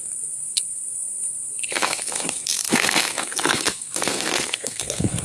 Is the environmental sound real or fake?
fake